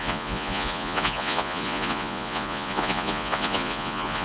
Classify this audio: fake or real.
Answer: fake